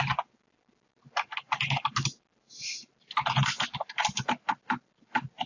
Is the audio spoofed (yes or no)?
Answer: no